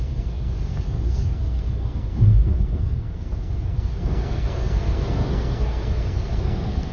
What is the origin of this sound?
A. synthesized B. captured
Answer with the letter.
A